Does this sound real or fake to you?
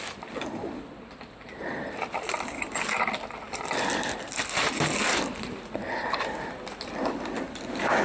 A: real